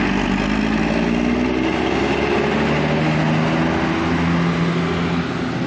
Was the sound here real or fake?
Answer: real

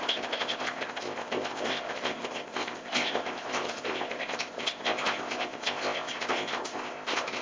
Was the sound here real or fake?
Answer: fake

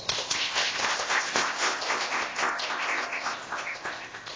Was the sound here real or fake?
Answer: fake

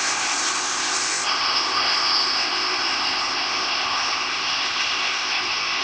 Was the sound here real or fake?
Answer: fake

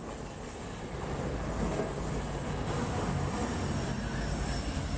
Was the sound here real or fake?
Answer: real